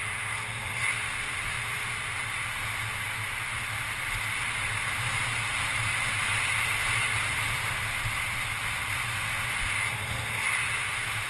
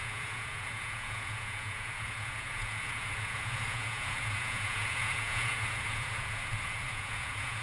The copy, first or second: second